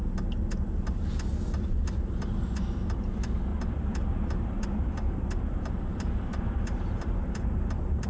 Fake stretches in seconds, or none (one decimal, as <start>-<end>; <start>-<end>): 3.5-8.1